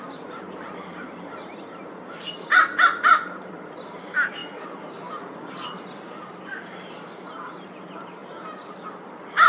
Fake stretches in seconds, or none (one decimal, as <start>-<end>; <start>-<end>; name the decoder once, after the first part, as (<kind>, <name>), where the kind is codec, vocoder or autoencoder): 0.0-8.2 (vocoder, BigVGAN v2); 9.1-9.5